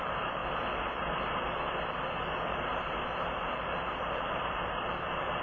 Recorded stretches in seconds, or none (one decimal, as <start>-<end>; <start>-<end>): 0.4-3.4